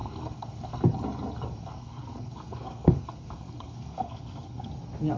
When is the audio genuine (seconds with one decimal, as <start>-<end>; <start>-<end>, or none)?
0.8-1.6; 4.7-5.2

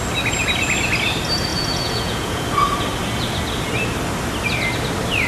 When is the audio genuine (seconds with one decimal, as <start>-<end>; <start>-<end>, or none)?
0.0-1.5; 2.4-5.3

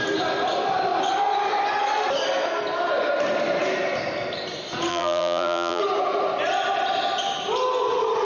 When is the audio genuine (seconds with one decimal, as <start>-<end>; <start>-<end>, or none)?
0.0-4.9; 5.8-8.2